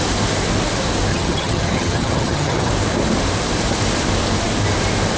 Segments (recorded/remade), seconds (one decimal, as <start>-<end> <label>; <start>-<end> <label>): 0.0-1.1 recorded; 1.1-2.7 remade; 2.7-5.2 recorded